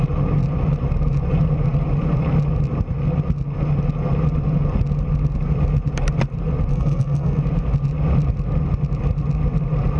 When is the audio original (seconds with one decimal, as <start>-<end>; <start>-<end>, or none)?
0.0-6.7; 7.4-10.0